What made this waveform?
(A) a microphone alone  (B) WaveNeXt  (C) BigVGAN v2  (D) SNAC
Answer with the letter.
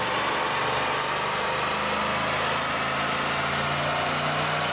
A